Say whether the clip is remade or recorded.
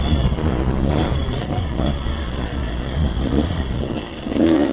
remade